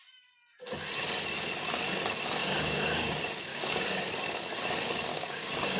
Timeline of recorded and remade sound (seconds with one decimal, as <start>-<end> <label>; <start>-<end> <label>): 0.0-2.4 recorded; 2.4-3.1 remade; 3.1-3.5 recorded; 3.5-4.1 remade; 4.1-5.1 recorded; 5.1-5.8 remade

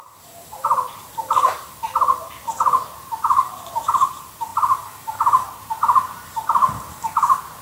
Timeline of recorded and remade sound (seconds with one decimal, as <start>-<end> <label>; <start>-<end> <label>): 0.0-7.6 remade

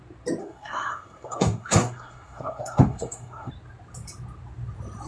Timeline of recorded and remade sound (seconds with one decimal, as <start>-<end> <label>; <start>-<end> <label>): 0.0-0.4 recorded; 0.4-3.5 remade; 3.5-5.1 recorded

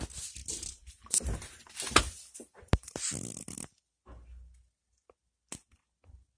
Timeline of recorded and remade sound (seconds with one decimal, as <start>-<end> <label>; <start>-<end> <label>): 0.0-6.4 recorded

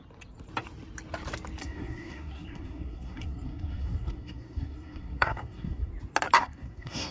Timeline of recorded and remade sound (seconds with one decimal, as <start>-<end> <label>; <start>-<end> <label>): 0.0-1.6 recorded; 1.6-5.9 remade; 5.9-6.4 recorded; 6.4-7.1 remade